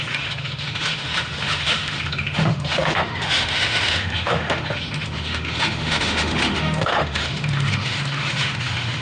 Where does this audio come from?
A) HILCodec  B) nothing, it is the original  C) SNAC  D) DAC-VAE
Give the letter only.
D